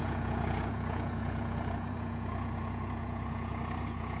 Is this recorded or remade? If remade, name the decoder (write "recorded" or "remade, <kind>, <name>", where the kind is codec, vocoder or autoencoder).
remade, vocoder, Vocos